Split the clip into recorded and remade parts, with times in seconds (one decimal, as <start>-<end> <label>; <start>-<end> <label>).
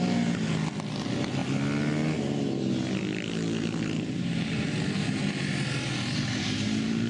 0.0-7.1 recorded